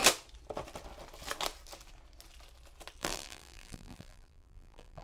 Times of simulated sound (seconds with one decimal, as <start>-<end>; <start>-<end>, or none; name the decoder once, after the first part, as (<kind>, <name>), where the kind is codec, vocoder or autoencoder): 3.0-5.0 (vocoder, BigVGAN v2)